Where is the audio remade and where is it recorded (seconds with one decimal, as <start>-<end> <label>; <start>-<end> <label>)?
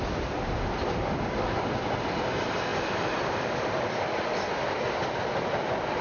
0.0-6.0 recorded